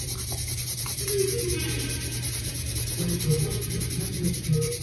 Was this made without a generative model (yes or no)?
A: no